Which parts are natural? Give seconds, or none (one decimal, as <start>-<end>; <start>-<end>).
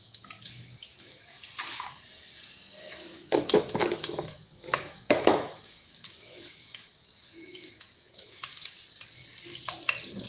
1.4-2.8; 8.5-10.3